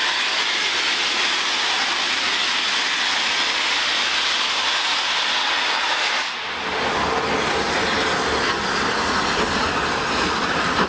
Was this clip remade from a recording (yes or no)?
no